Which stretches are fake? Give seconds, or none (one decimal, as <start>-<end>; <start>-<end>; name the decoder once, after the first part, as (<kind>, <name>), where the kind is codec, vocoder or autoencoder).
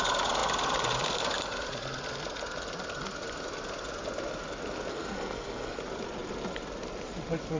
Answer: 4.9-5.8 (codec, SNAC)